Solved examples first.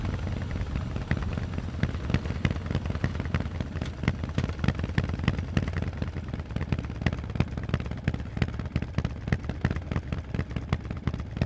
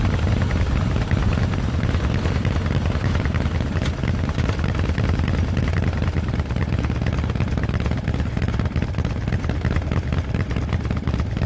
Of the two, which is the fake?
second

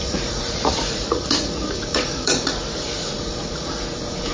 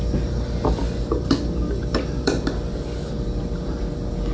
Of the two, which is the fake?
first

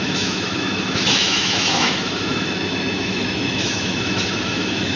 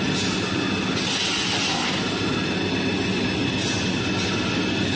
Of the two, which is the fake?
first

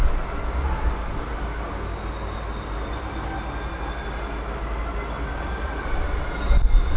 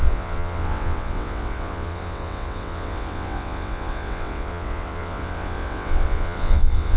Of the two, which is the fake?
second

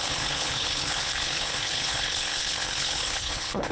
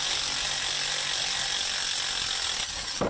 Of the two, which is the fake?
first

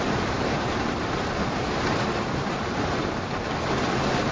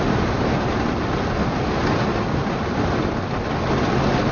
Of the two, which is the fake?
first